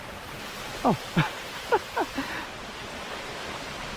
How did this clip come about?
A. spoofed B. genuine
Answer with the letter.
B